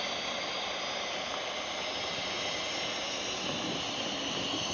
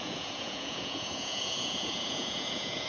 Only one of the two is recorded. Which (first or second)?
first